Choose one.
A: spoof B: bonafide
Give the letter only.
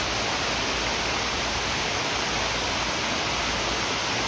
B